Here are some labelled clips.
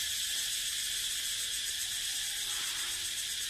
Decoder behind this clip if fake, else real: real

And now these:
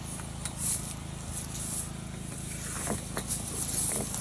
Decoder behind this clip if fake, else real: real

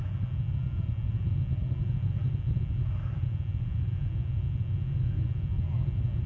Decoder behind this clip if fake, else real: real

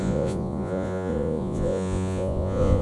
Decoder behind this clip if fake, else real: fake, vocoder, Vocos